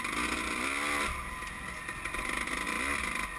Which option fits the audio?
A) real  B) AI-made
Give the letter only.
A